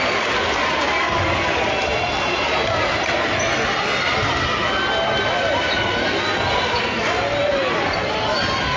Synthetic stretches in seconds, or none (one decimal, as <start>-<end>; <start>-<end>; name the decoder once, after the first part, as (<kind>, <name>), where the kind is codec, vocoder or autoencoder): none